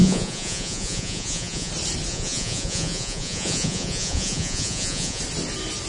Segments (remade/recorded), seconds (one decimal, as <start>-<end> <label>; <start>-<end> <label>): 0.0-1.7 remade; 1.7-2.1 recorded; 2.1-5.2 remade; 5.2-5.9 recorded